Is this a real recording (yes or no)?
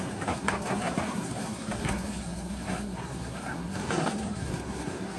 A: no